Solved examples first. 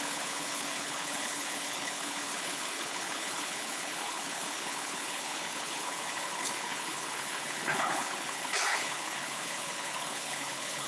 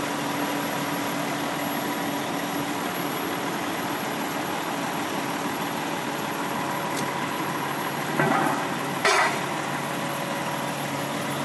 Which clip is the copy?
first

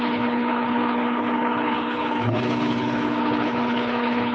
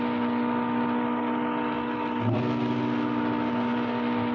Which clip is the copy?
first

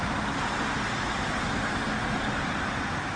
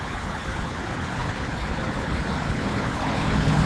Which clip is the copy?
second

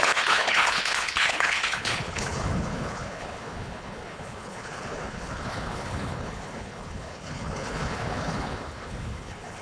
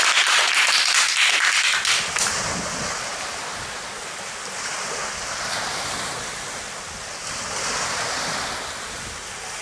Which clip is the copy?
first